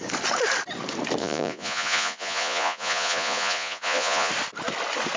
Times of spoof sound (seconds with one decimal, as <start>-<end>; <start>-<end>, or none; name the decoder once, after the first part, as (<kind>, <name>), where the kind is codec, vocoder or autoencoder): 1.2-4.3 (vocoder, Vocos)